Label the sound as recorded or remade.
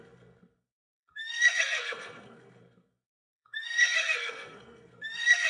remade